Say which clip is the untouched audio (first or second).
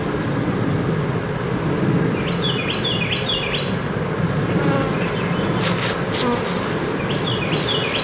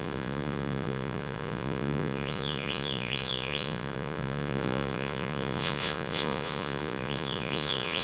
first